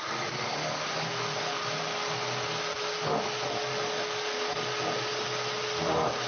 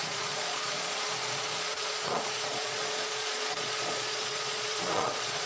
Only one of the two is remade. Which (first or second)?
second